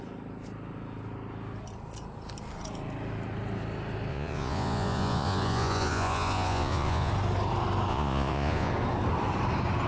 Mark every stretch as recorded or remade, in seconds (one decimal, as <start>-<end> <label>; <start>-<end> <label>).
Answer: 0.0-4.1 recorded; 4.1-7.1 remade; 7.1-7.9 recorded; 7.9-8.7 remade; 8.7-9.9 recorded